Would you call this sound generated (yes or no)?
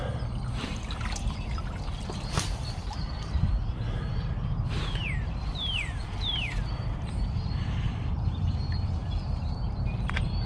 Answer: yes